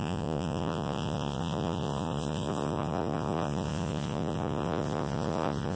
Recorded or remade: remade